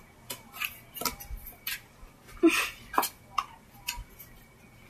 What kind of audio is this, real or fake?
real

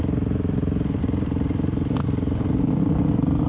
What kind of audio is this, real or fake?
real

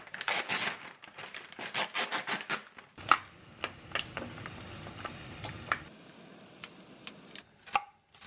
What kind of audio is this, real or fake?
real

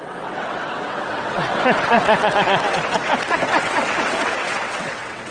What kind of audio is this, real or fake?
fake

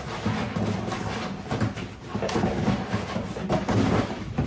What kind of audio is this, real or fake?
real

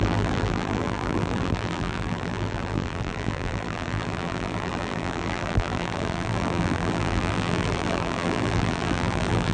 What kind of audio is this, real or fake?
fake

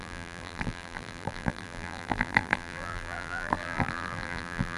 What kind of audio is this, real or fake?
fake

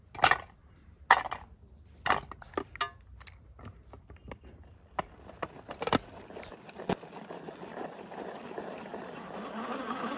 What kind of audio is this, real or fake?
real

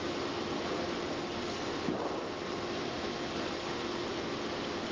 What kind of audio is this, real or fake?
real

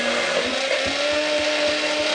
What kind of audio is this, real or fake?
real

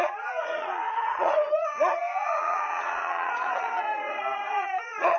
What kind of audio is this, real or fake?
fake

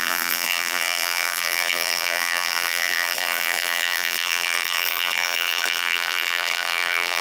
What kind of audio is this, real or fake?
fake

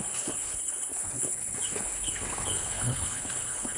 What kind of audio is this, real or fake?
fake